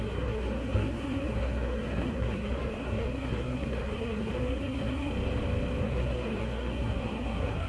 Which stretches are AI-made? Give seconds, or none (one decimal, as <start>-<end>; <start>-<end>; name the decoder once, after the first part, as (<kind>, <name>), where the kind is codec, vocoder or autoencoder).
0.0-5.1 (codec, SNAC); 5.8-7.7